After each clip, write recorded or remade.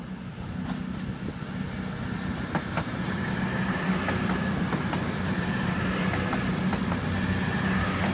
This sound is recorded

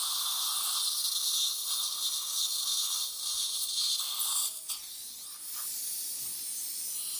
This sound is recorded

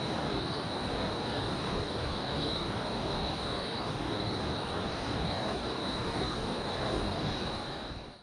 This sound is remade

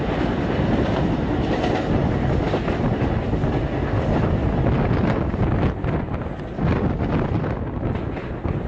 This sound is recorded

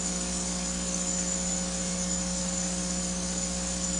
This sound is remade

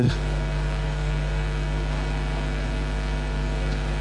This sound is remade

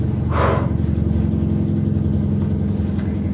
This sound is recorded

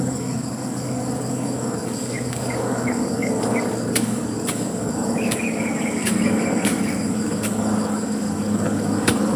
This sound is remade